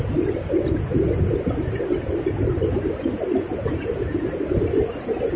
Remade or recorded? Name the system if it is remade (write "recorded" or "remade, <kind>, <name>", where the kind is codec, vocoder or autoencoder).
recorded